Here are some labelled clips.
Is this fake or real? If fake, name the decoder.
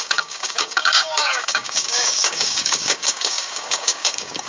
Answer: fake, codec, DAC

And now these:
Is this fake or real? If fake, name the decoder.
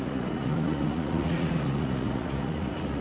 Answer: fake, vocoder, Vocos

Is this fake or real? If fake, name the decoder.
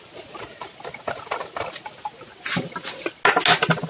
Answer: real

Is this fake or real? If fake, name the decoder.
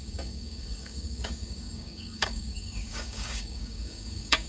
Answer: fake, codec, DAC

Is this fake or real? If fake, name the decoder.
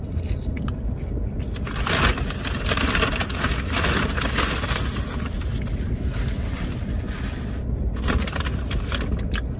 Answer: real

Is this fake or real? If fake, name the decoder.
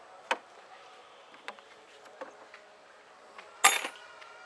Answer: real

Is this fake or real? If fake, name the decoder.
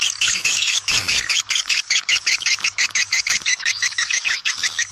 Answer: fake, codec, DAC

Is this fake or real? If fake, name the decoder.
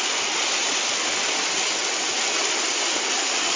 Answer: real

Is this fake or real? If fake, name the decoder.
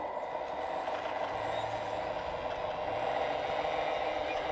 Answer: real